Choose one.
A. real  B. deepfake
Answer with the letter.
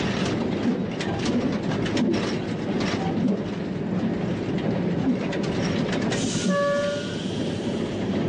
A